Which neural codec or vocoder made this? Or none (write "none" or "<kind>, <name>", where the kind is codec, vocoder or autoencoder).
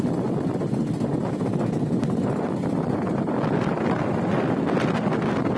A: none